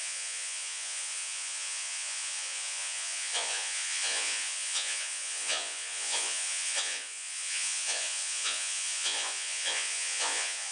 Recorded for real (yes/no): no